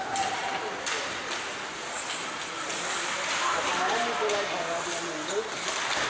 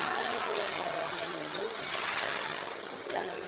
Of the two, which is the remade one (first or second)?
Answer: second